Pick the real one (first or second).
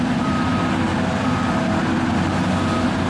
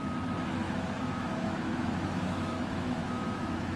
first